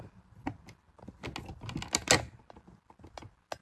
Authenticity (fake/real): real